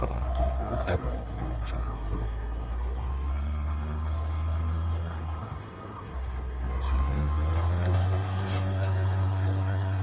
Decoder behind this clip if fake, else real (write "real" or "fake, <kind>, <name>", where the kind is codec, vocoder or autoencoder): fake, codec, SNAC